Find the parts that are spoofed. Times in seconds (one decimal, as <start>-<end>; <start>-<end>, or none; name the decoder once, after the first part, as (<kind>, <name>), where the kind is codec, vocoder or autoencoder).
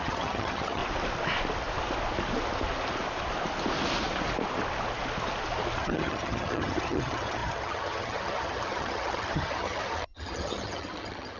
0.0-0.8 (vocoder, HiFi-GAN); 5.8-11.4